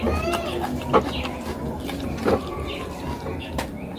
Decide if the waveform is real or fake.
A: real